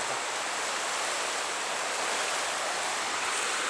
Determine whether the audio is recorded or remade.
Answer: recorded